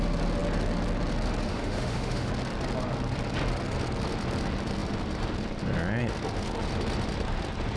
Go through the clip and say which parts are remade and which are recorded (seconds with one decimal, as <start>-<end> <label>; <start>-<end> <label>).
0.0-1.5 recorded; 1.5-2.3 remade; 2.3-7.8 recorded